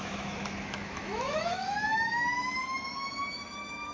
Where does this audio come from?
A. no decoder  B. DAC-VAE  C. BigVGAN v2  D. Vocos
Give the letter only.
B